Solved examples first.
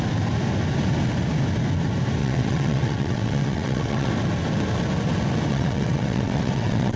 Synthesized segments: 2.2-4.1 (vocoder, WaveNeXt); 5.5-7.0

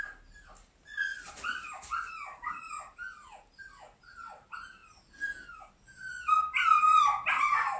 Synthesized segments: none